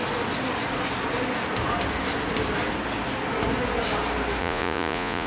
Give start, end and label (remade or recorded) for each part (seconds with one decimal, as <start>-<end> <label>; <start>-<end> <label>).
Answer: 0.0-4.4 recorded; 4.4-5.3 remade

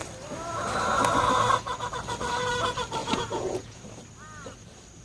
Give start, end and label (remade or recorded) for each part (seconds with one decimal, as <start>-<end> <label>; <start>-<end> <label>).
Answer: 0.0-3.0 recorded; 3.0-3.8 remade; 3.8-5.0 recorded

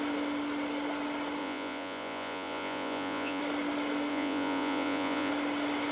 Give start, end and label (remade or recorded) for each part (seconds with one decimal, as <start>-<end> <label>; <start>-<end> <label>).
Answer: 0.0-1.4 recorded; 1.4-3.4 remade; 3.4-4.1 recorded; 4.1-5.3 remade; 5.3-5.9 recorded

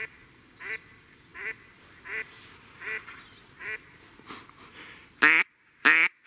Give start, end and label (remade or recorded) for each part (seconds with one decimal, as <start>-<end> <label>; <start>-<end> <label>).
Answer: 0.0-6.3 recorded

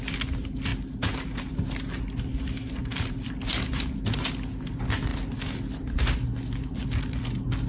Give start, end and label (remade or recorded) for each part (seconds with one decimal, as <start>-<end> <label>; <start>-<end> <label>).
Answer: 0.0-7.7 recorded

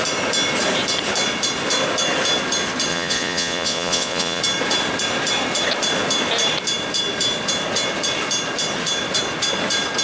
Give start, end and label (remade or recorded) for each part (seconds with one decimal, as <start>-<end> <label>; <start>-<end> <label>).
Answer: 0.0-2.9 recorded; 2.9-4.4 remade; 4.4-10.0 recorded

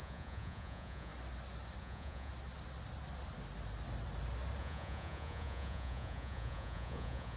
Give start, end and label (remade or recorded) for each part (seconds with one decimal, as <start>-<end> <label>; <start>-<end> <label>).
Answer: 0.0-1.1 remade; 1.1-1.8 recorded; 1.8-2.3 remade; 2.3-4.6 recorded; 4.6-7.4 remade

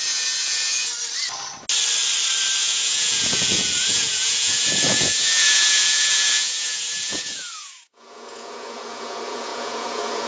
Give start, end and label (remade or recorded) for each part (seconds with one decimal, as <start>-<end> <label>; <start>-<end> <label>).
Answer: 0.0-0.9 remade; 0.9-2.6 recorded; 2.6-10.3 remade